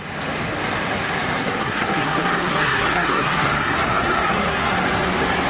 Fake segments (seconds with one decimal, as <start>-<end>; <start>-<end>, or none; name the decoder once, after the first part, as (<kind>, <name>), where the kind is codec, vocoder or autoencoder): 1.4-4.7 (codec, SNAC)